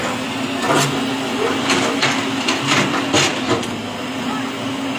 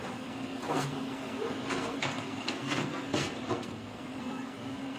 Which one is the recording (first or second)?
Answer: first